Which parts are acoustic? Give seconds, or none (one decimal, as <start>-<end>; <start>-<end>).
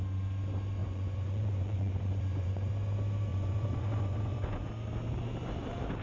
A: 0.0-0.8; 2.7-3.3; 4.7-6.0